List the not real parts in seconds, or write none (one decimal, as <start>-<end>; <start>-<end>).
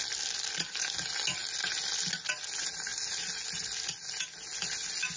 none